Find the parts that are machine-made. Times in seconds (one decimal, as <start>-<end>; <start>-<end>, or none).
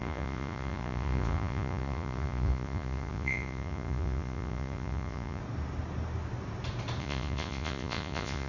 0.0-5.4; 7.0-8.5